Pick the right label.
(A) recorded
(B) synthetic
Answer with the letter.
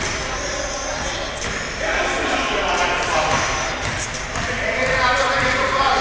B